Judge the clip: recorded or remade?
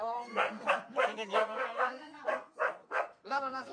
remade